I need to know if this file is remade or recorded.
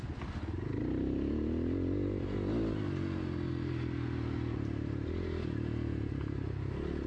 recorded